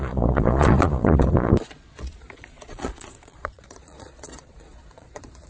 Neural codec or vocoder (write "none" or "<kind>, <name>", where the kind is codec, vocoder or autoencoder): vocoder, Vocos